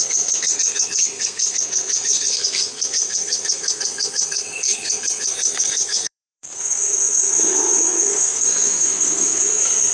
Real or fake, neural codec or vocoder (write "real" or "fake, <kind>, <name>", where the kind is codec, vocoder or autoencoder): fake, codec, SNAC